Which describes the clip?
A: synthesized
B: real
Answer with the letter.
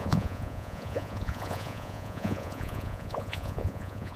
A